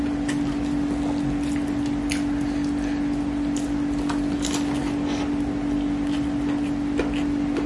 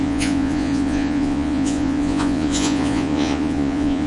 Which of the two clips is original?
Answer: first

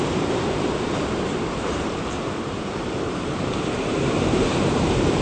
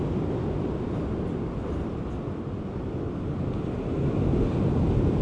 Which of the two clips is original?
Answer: second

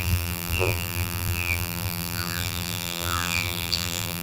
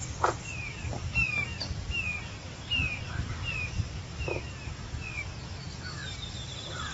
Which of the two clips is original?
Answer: second